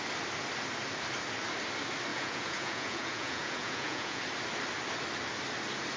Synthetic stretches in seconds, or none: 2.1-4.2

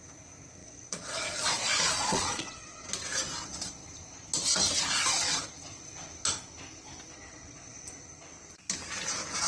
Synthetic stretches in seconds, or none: 0.6-2.9; 7.1-7.8

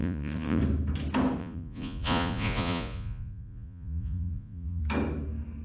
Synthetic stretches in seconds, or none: 0.0-0.6; 1.4-4.8

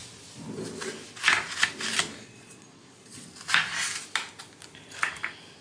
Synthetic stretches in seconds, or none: 2.2-3.3

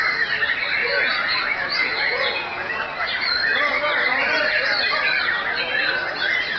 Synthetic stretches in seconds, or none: 0.8-2.7